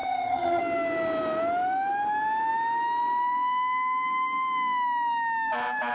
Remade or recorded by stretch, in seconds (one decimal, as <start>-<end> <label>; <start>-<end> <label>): 0.0-0.6 remade; 0.6-5.9 recorded